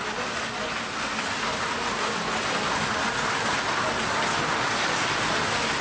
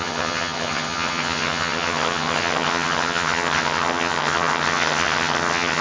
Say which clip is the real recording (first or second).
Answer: first